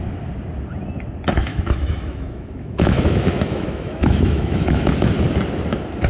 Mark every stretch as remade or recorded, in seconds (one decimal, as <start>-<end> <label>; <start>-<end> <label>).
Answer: 0.0-1.5 recorded; 1.5-5.2 remade; 5.2-6.1 recorded